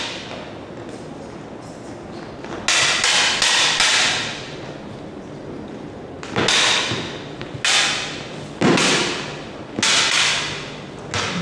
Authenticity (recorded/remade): recorded